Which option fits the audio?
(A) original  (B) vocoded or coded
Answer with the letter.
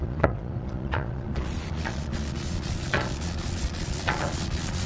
B